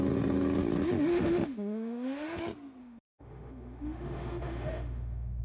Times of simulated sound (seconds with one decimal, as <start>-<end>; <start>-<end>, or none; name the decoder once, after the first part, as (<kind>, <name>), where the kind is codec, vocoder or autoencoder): 1.1-2.4 (autoencoder, DAC-VAE); 2.8-5.4